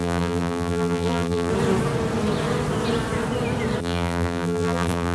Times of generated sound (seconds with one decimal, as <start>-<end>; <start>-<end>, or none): 0.0-1.5; 3.8-5.1